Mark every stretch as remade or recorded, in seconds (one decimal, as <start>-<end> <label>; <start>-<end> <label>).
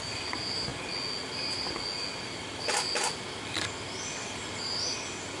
0.0-5.4 recorded